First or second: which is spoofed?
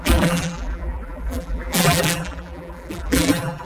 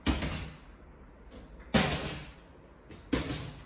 first